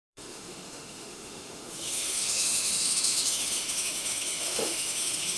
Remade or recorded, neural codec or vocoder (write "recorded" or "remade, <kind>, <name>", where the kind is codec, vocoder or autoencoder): remade, autoencoder, DAC-VAE